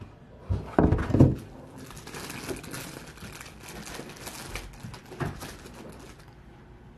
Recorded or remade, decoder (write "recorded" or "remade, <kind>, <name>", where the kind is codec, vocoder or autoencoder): recorded